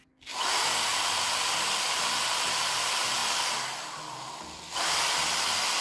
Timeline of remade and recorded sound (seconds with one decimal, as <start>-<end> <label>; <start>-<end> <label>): 0.0-5.8 recorded